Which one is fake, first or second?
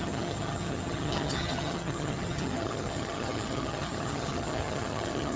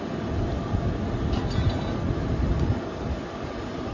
first